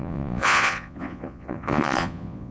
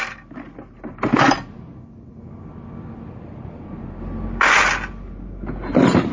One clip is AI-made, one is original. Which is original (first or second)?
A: second